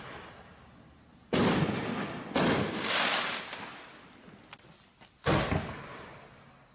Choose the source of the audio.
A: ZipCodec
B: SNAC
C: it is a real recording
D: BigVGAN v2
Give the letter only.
C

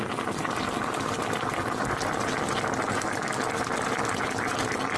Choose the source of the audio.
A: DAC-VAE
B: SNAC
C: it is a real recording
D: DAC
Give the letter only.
C